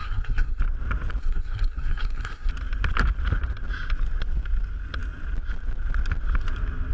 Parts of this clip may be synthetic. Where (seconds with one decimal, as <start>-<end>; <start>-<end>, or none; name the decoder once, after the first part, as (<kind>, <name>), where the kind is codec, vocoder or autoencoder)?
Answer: 0.0-0.6 (codec, SNAC); 1.2-2.5